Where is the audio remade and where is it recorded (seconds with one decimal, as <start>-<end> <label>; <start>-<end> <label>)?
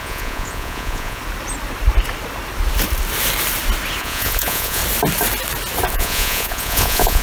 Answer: 0.0-1.2 remade; 1.2-4.0 recorded; 4.0-4.8 remade; 4.8-5.9 recorded; 5.9-7.2 remade